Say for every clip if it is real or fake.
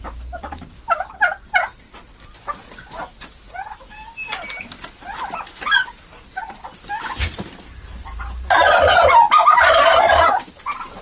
real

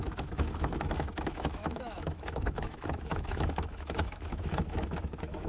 fake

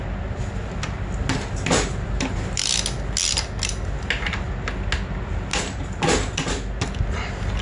real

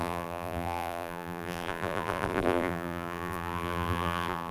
fake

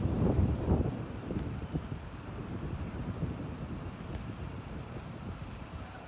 fake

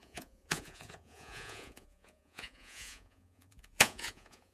fake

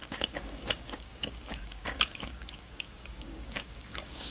fake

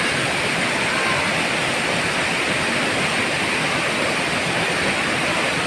real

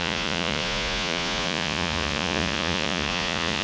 fake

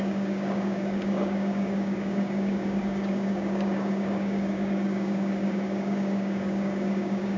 fake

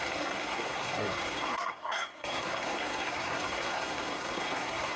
fake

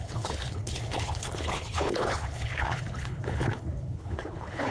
fake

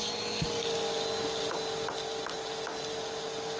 real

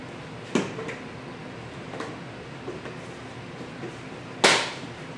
real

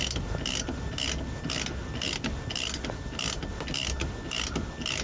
real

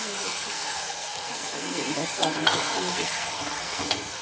fake